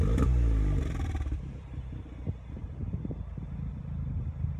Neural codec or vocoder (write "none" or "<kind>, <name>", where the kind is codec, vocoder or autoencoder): none